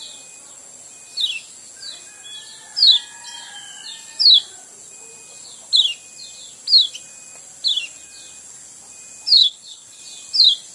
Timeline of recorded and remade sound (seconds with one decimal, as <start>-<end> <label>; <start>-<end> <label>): 0.0-9.4 recorded; 9.4-10.0 remade; 10.0-10.7 recorded